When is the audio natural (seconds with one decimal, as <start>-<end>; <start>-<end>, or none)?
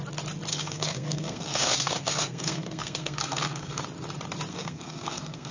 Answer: 0.0-0.5; 3.8-4.5